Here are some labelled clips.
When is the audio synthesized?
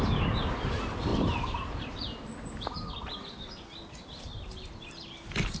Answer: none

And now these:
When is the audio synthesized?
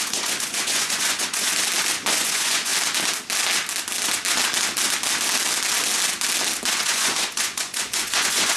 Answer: 0.0-1.5 (vocoder, Vocos); 2.1-2.7; 6.7-8.6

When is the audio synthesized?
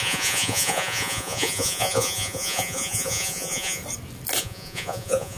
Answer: 0.0-3.8 (vocoder, Vocos); 4.4-5.4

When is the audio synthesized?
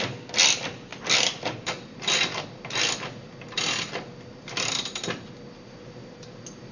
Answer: none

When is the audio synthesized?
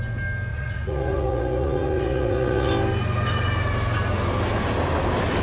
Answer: 0.5-2.7 (vocoder, Vocos)